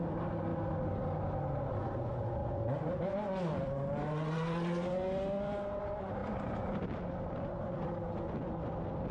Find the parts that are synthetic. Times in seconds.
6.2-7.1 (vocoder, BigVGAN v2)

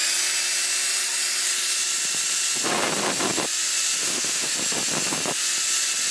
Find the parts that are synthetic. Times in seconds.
4.0-4.5 (autoencoder, DAC-VAE)

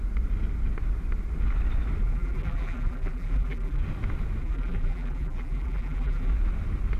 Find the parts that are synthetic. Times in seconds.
2.0-3.8 (vocoder, BigVGAN v2); 4.4-6.3